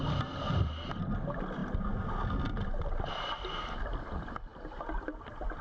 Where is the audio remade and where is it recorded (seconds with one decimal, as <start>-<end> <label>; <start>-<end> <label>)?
0.0-5.6 recorded